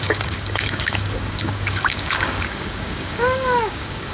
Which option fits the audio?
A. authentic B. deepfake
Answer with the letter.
B